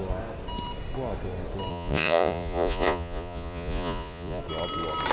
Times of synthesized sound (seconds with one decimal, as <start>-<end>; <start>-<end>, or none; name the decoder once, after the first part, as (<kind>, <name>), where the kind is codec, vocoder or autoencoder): 1.7-4.4 (vocoder, Vocos)